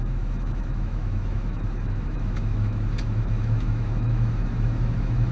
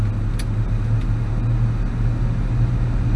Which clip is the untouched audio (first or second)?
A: second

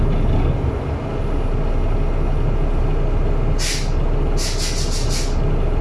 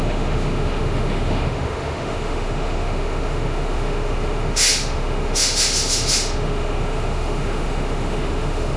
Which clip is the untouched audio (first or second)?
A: first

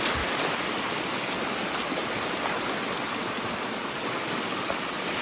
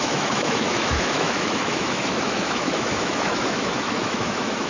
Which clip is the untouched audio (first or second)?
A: first